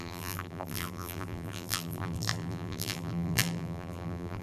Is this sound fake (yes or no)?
yes